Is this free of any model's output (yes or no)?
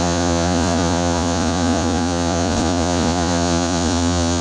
no